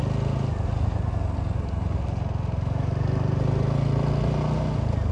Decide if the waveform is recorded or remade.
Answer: recorded